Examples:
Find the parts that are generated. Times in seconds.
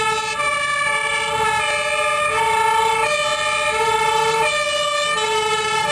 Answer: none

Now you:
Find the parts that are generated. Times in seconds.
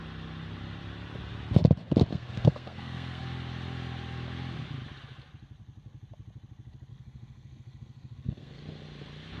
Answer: 2.1-3.2 (codec, SNAC); 6.9-8.6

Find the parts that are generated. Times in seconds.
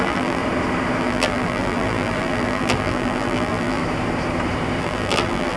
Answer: 0.0-0.4 (vocoder, BigVGAN v2); 1.0-3.8; 4.8-5.6